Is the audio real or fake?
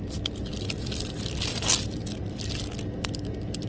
real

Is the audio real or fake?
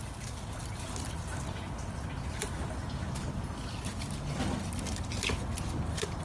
real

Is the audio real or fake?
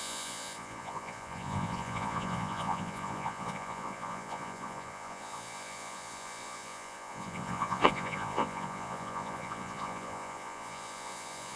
fake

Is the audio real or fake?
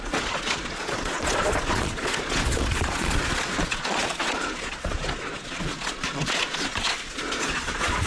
fake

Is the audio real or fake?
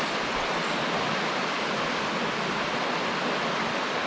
real